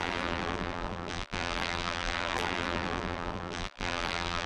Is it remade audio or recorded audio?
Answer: remade